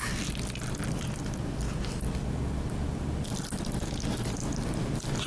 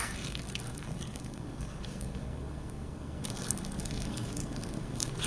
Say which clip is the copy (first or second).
second